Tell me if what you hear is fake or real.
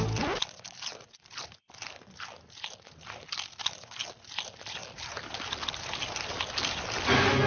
real